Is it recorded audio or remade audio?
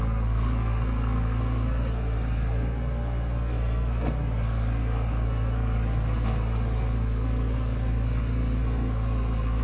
remade